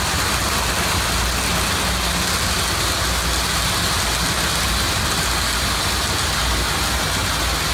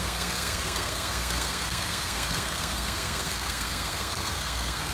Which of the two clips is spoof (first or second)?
second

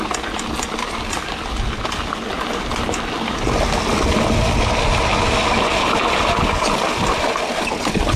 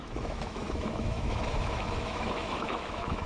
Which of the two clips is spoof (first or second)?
second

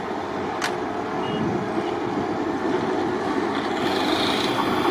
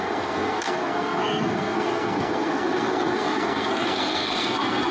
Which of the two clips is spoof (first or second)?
second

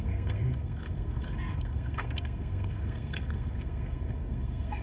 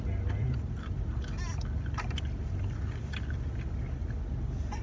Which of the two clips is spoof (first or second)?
first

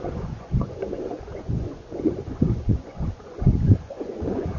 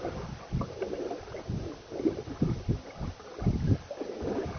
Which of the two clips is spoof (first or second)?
first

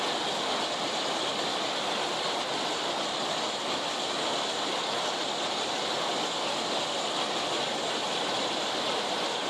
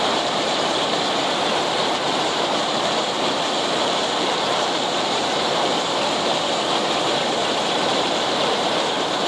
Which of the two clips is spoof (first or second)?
second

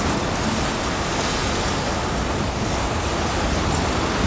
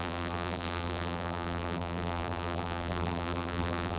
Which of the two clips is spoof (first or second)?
second